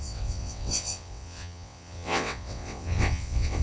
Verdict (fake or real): fake